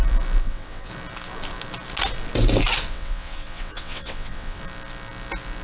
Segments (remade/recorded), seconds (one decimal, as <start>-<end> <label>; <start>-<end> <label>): 0.0-0.4 recorded; 0.4-0.9 remade; 0.9-2.9 recorded; 2.9-4.6 remade; 4.6-5.6 recorded